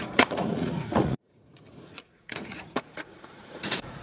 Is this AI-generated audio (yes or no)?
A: yes